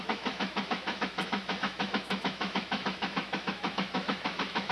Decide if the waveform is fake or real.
fake